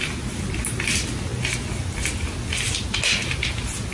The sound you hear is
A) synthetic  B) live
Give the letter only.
B